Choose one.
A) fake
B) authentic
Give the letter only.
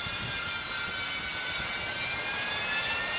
B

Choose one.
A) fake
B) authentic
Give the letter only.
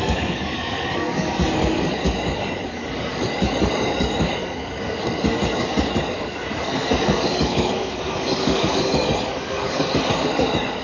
A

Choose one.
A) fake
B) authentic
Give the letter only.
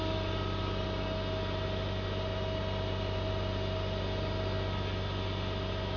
B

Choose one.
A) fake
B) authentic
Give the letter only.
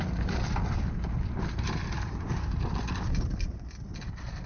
B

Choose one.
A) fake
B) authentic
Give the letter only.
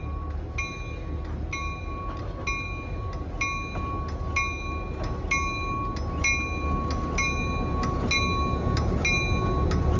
B